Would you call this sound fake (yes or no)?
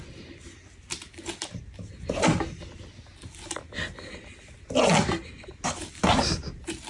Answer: no